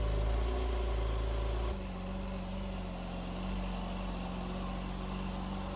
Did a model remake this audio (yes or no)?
no